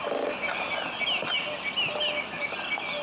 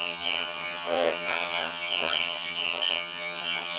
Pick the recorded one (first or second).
first